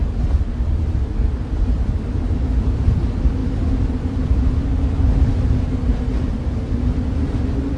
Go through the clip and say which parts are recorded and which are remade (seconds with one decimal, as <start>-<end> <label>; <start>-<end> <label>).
0.0-7.8 recorded